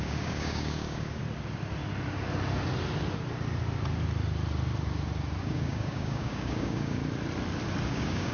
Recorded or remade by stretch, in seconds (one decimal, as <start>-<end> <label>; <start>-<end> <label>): 0.0-1.2 remade; 1.2-5.4 recorded; 5.4-7.0 remade; 7.0-7.9 recorded; 7.9-8.3 remade

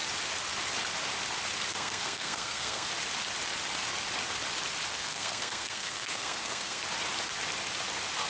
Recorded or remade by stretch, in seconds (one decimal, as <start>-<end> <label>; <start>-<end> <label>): 0.0-1.7 recorded; 1.7-2.9 remade; 2.9-4.9 recorded; 4.9-6.8 remade; 6.8-8.3 recorded

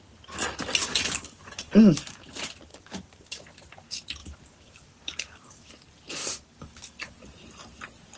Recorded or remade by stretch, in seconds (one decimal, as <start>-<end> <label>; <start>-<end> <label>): 0.0-0.8 recorded; 0.8-2.2 remade; 2.2-2.7 recorded; 2.7-3.4 remade; 3.4-4.2 recorded; 4.2-5.7 remade; 5.7-6.2 recorded; 6.2-7.1 remade; 7.1-8.2 recorded

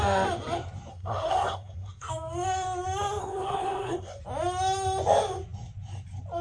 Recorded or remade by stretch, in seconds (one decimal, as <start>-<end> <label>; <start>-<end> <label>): 0.0-0.9 recorded; 0.9-2.1 remade; 2.1-3.2 recorded; 3.2-4.2 remade; 4.2-6.4 recorded

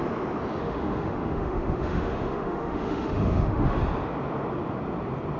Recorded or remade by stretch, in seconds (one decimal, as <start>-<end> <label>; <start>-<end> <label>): 0.0-0.6 recorded; 0.6-3.8 remade; 3.8-5.4 recorded

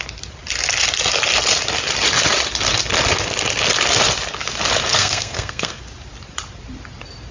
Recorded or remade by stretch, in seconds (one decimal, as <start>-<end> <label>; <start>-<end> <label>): 0.0-4.9 recorded; 4.9-5.8 remade; 5.8-7.3 recorded